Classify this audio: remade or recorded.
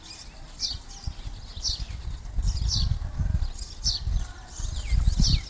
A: recorded